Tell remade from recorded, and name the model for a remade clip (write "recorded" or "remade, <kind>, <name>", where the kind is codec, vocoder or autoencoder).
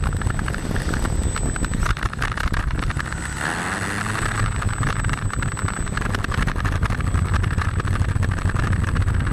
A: recorded